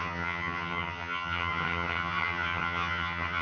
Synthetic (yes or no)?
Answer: yes